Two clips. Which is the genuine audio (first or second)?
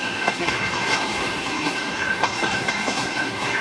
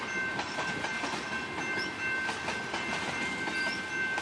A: second